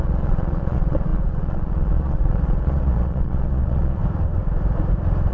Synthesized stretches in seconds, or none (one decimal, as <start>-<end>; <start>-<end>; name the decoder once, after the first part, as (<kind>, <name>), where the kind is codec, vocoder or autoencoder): 0.0-4.0 (vocoder, Vocos)